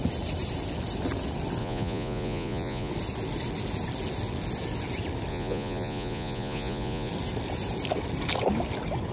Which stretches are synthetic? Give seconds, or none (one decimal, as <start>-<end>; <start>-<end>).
1.6-2.9; 5.3-7.1

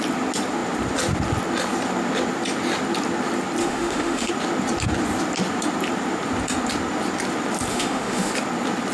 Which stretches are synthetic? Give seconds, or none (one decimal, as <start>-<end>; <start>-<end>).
3.6-4.3; 7.7-8.3